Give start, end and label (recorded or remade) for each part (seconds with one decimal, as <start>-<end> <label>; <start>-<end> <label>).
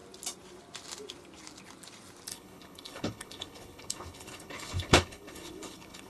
0.0-2.3 recorded; 2.3-6.1 remade